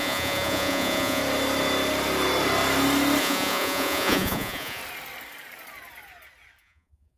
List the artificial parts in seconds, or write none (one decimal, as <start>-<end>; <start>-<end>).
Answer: 0.0-1.2; 3.2-4.8; 6.6-7.2